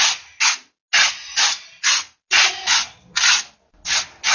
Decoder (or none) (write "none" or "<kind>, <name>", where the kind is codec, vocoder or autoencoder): none